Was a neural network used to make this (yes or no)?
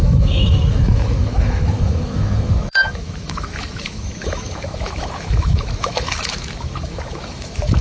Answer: yes